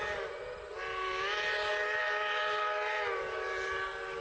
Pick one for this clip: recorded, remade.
recorded